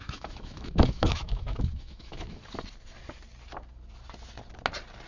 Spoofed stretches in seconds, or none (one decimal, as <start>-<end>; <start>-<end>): 0.0-2.4

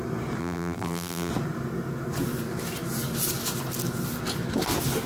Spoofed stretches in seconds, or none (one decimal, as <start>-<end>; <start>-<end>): 0.4-1.3

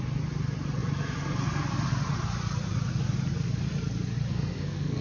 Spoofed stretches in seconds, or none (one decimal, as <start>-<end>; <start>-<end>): 4.3-5.0

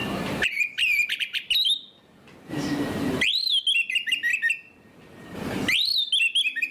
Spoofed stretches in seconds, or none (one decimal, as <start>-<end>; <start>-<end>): 0.0-1.2; 4.3-5.2